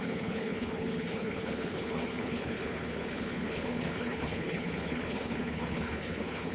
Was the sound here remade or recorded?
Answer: remade